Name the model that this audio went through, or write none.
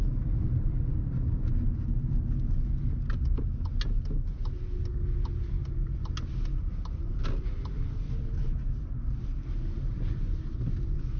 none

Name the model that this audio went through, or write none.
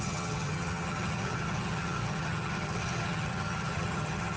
vocoder, HiFi-GAN